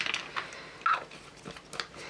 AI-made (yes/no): no